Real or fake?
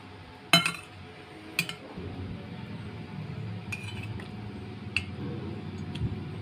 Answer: real